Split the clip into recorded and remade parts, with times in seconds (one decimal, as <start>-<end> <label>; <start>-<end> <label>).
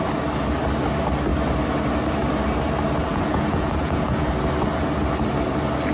0.0-3.1 recorded; 3.1-4.3 remade; 4.3-5.9 recorded